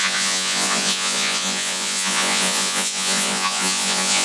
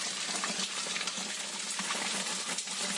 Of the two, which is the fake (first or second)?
first